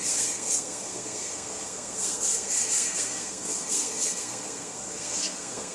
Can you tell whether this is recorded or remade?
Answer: remade